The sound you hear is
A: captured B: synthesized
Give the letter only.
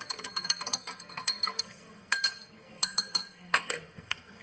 B